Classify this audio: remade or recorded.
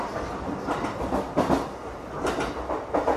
recorded